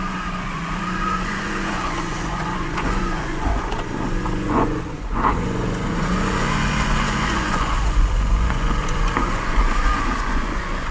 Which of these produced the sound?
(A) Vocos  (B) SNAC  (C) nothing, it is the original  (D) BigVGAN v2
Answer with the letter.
A